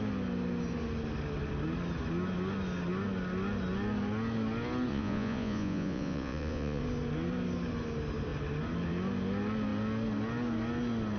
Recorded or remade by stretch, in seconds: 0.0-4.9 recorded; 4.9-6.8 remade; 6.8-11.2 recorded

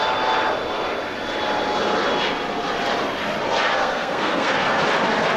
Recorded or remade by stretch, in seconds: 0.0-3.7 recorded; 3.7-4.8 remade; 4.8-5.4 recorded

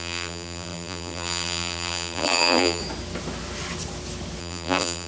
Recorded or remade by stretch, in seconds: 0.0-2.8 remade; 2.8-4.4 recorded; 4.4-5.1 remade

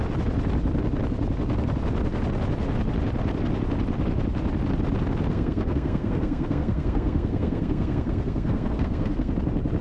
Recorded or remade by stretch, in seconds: 0.0-5.3 recorded; 5.3-9.3 remade; 9.3-9.8 recorded

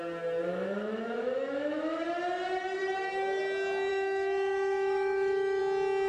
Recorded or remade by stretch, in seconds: 0.0-0.5 recorded; 0.5-2.0 remade; 2.0-3.9 recorded; 3.9-5.6 remade; 5.6-6.1 recorded

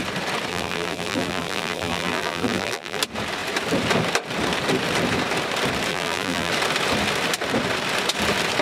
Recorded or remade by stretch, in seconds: 0.0-0.5 recorded; 0.5-3.0 remade; 3.0-5.9 recorded; 5.9-6.5 remade; 6.5-8.6 recorded

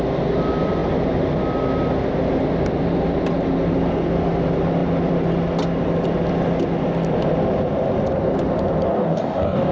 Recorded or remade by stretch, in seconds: 0.0-8.9 recorded; 8.9-9.7 remade

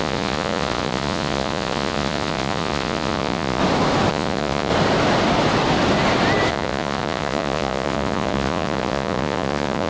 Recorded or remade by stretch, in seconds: 0.0-3.6 remade; 3.6-4.1 recorded; 4.1-4.7 remade; 4.7-6.5 recorded; 6.5-9.9 remade